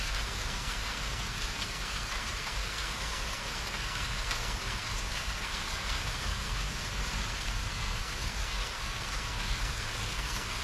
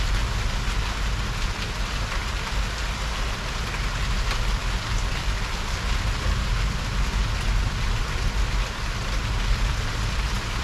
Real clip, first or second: second